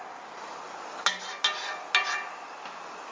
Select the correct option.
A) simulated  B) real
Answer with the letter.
B